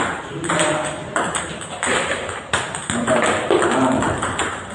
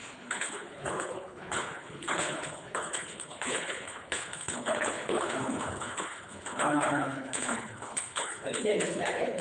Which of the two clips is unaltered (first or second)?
first